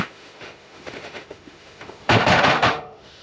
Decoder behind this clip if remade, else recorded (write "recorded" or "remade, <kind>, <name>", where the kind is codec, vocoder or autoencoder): remade, autoencoder, DAC-VAE